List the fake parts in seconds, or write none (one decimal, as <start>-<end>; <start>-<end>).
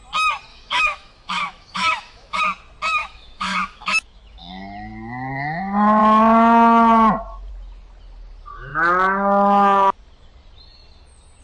0.5-2.4; 3.0-4.5